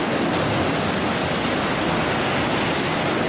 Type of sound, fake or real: real